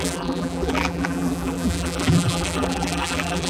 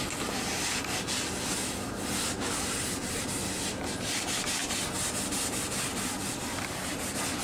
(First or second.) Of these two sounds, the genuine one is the second